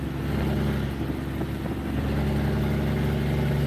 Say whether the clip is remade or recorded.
recorded